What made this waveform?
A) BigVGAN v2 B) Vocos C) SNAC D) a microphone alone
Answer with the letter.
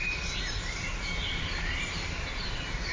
A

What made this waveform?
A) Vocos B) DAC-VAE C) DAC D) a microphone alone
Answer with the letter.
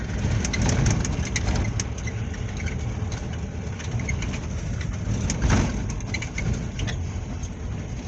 D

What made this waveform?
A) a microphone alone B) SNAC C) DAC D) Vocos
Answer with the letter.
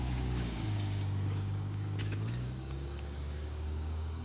C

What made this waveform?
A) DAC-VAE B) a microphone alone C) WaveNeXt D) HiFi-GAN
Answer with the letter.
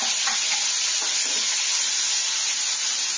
B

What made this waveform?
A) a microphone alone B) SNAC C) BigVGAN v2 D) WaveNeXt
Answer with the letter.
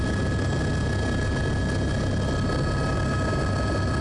A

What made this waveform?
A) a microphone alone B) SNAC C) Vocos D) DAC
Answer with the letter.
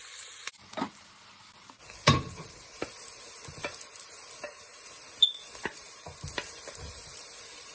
A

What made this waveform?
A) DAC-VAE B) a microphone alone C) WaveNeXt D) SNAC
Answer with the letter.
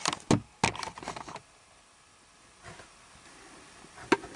B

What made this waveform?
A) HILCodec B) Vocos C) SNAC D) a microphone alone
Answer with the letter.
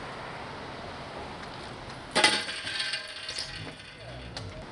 D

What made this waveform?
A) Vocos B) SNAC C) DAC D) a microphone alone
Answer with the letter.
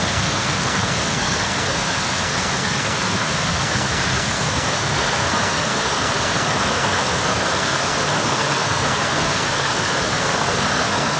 B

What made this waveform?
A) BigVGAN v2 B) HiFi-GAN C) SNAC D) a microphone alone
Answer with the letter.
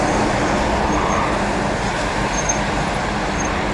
D